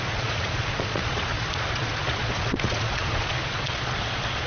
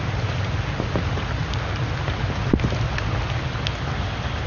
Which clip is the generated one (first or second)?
first